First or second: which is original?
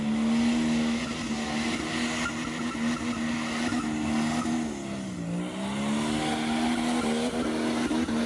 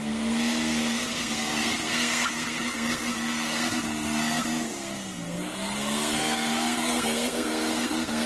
first